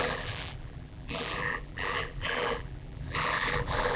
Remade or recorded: remade